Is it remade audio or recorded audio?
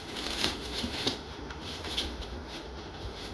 remade